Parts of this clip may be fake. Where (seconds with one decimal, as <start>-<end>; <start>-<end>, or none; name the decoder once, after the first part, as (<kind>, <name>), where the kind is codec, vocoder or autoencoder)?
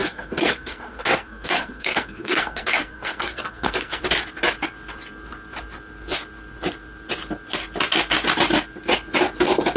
0.0-4.0 (codec, SNAC)